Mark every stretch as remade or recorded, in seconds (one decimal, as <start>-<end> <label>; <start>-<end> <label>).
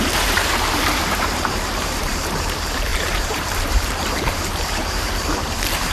0.0-5.9 remade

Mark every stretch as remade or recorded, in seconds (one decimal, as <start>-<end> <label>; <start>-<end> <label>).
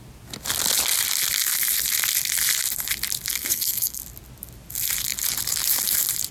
0.0-3.3 recorded; 3.3-4.0 remade; 4.0-6.3 recorded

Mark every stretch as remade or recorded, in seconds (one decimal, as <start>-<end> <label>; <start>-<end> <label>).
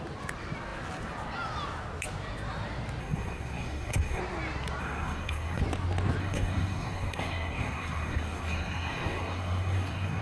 0.0-3.0 recorded; 3.0-4.2 remade; 4.2-4.8 recorded; 4.8-5.6 remade; 5.6-6.2 recorded; 6.2-10.2 remade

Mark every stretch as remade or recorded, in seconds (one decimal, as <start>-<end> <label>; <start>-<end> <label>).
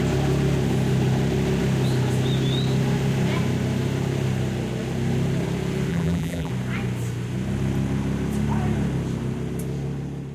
0.0-5.9 recorded; 5.9-6.5 remade; 6.5-10.3 recorded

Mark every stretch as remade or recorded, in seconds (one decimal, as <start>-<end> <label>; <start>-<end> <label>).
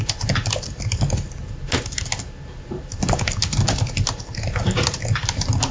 0.0-5.7 recorded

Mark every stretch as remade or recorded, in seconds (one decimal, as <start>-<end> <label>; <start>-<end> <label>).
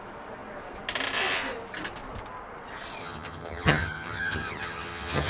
0.0-3.0 recorded; 3.0-5.3 remade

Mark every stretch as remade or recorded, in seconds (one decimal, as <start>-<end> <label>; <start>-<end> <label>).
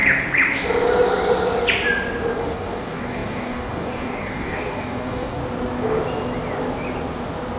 0.0-2.4 recorded; 2.4-5.4 remade; 5.4-7.6 recorded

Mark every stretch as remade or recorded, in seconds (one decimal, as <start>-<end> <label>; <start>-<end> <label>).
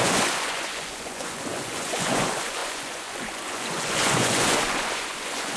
0.0-5.6 remade